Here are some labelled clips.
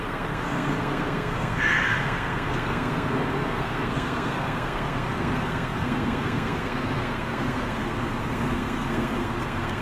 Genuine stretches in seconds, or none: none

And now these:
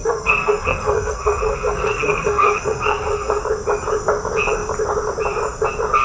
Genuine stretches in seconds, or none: 3.4-6.0

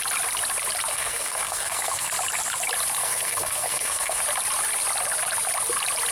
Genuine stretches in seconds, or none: 0.0-0.9; 2.1-3.0; 4.2-6.1